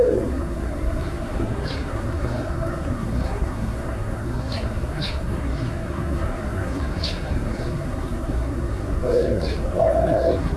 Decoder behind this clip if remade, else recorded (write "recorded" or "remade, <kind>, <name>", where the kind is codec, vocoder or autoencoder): remade, codec, SNAC